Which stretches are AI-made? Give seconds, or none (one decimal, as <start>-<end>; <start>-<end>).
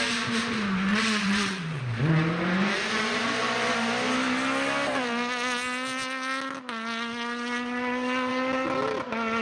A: 0.9-1.8